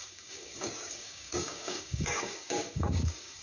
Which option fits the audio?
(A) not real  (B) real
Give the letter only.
A